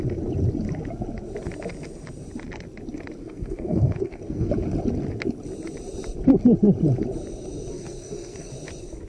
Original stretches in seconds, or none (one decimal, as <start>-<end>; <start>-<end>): 0.0-3.2; 4.5-7.7; 8.5-9.1